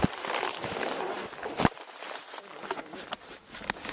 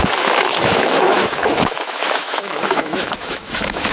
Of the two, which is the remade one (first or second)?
second